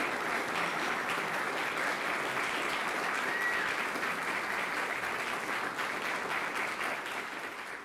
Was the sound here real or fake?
real